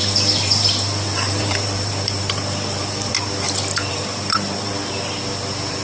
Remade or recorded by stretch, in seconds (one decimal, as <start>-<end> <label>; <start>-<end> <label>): 0.0-3.1 remade; 3.1-3.9 recorded; 3.9-4.7 remade; 4.7-5.8 recorded